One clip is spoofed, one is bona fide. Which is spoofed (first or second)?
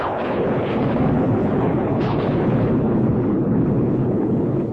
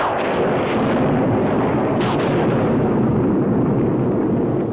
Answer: first